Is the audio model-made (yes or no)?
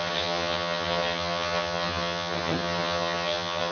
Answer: yes